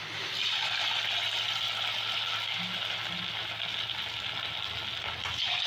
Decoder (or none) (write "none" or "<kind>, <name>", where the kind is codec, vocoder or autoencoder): none